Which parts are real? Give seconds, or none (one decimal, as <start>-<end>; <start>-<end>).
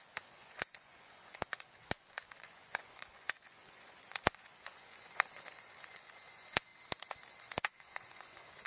6.7-7.4